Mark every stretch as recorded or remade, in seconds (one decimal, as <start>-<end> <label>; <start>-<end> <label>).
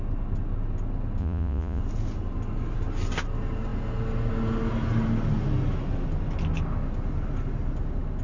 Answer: 0.0-1.2 recorded; 1.2-1.8 remade; 1.8-8.2 recorded